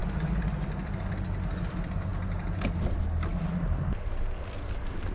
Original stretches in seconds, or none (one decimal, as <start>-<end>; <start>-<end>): 0.0-5.1